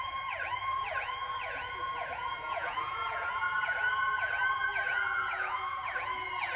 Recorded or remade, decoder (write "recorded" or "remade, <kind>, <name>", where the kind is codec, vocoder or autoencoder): remade, vocoder, Vocos